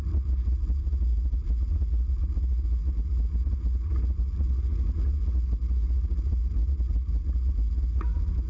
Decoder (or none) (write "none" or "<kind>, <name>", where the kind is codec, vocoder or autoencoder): none